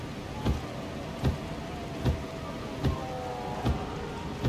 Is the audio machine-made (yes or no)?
no